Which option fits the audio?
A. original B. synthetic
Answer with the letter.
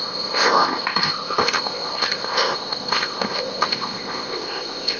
B